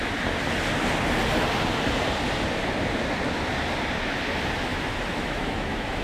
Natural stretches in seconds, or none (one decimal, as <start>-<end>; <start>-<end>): 0.0-4.7